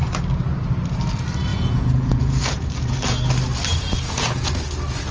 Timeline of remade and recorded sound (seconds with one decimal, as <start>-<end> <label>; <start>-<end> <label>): 0.0-1.5 recorded; 1.5-2.7 remade; 2.7-3.7 recorded; 3.7-4.5 remade; 4.5-5.1 recorded